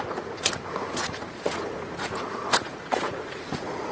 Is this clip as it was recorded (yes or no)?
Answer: no